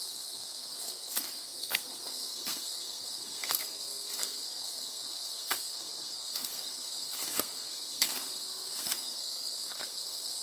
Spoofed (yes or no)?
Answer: yes